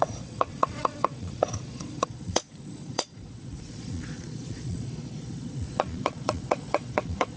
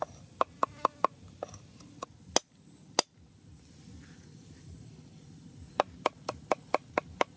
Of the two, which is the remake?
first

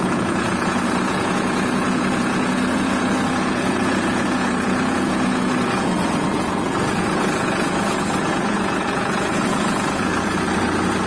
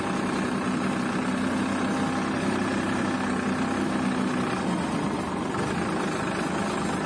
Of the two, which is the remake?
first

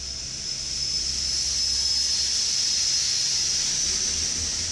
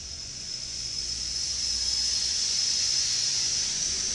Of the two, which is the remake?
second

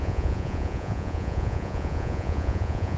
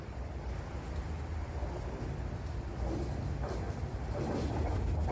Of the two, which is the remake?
first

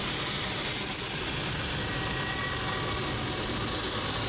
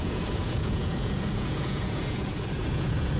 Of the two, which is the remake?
second